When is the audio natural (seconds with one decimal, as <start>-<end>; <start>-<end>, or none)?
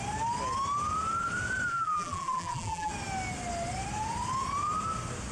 0.0-1.7; 2.9-5.3